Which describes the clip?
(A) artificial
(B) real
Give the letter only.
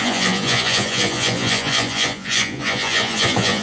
A